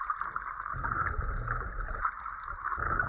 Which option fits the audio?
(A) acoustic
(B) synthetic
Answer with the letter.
A